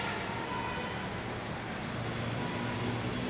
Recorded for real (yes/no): yes